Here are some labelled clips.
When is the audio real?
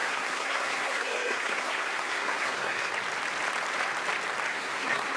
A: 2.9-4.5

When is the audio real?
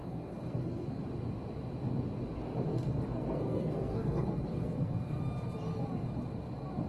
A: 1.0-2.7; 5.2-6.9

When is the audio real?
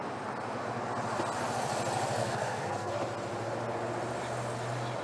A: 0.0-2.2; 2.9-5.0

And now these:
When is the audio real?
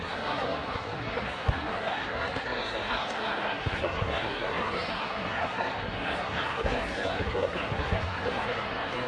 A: none